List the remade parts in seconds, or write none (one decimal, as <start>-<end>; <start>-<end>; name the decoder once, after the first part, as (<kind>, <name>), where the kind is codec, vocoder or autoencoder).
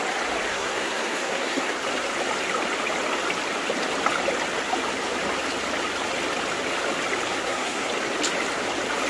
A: 0.5-1.7 (codec, SNAC); 7.3-7.9